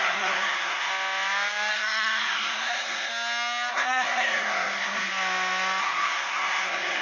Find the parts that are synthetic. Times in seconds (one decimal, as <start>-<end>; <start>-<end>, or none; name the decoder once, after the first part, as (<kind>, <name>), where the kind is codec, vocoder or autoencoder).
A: 0.0-0.9 (codec, SNAC); 1.7-3.1; 3.7-5.1; 5.8-7.0